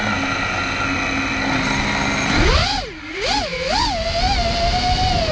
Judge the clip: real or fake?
real